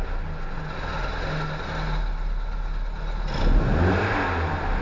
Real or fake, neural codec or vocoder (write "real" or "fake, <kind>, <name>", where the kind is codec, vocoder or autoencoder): real